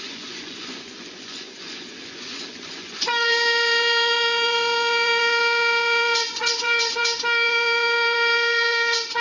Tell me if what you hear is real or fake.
fake